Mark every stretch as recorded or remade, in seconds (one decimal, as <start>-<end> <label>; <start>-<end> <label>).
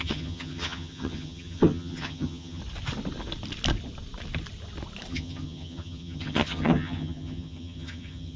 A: 0.0-2.6 remade; 2.6-5.1 recorded; 5.1-8.4 remade